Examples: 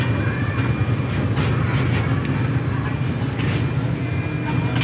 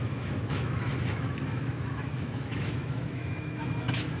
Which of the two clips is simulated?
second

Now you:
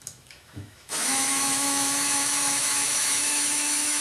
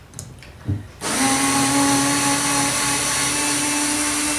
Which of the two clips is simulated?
first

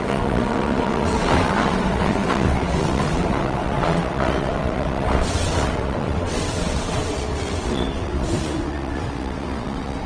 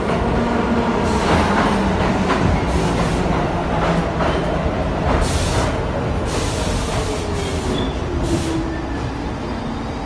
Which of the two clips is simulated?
first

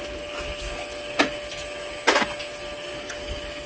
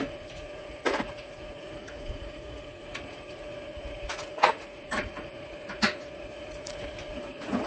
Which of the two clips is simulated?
second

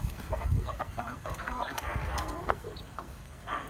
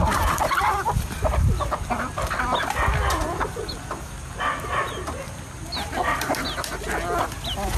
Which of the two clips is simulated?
first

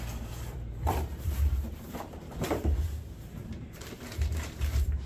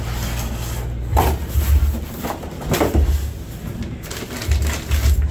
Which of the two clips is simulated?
first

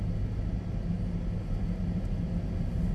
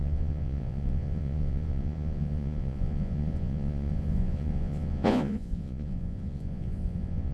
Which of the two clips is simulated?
second